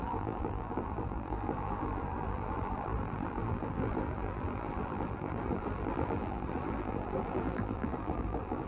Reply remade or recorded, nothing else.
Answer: remade